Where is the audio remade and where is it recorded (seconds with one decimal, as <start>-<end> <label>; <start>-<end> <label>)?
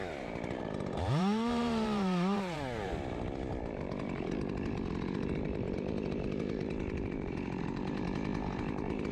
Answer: 0.0-2.9 remade; 2.9-3.6 recorded; 3.6-9.1 remade